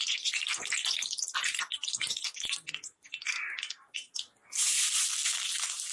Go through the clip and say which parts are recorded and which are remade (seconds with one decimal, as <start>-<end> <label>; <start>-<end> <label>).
0.0-5.9 recorded